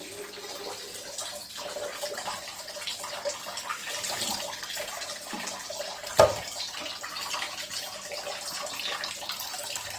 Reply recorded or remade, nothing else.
recorded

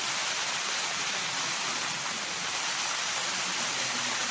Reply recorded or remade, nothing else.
recorded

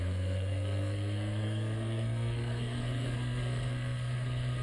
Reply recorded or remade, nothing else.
remade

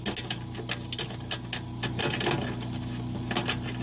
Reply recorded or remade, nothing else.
recorded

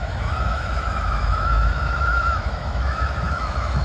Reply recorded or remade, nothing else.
remade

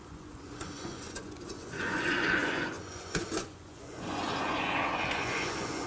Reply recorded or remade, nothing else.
remade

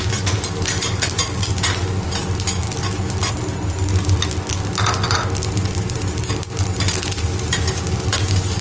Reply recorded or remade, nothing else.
recorded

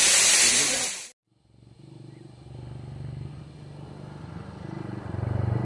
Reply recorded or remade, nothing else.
recorded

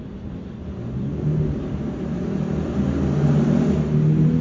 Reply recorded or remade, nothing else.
recorded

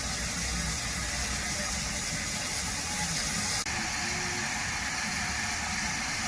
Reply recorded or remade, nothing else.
recorded